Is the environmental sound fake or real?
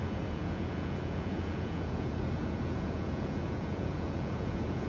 fake